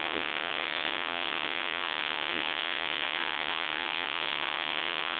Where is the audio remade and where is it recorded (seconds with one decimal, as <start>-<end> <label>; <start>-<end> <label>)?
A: 0.0-5.2 remade